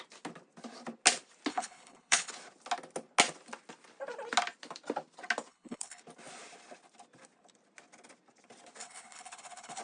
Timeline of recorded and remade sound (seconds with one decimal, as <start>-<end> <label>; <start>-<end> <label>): 0.0-1.5 recorded; 1.5-2.3 remade; 2.3-5.5 recorded; 5.5-6.0 remade; 6.0-8.8 recorded; 8.8-9.8 remade